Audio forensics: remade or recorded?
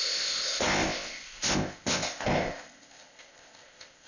remade